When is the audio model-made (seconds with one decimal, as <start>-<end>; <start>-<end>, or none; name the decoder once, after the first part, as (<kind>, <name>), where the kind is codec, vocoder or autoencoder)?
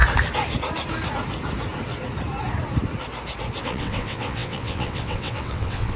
3.6-6.0 (vocoder, WaveNeXt)